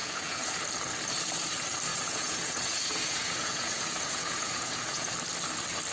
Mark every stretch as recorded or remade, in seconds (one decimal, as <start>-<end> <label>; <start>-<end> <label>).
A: 0.0-0.5 remade; 0.5-1.9 recorded; 1.9-5.1 remade; 5.1-5.9 recorded